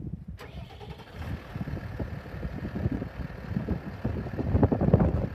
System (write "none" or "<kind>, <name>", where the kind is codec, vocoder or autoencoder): none